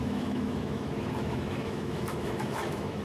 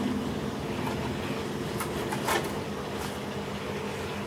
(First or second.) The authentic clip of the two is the second